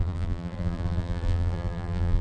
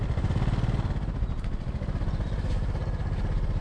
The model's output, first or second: first